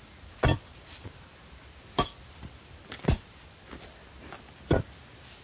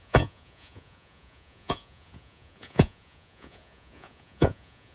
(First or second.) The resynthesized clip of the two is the second